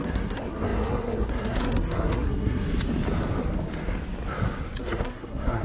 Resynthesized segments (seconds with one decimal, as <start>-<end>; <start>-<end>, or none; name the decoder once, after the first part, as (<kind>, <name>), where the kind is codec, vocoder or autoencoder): 0.0-2.7 (codec, SNAC); 4.8-5.6